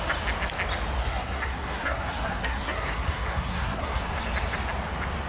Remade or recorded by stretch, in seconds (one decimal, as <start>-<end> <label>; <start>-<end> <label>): 0.0-1.0 recorded; 1.0-4.0 remade; 4.0-5.3 recorded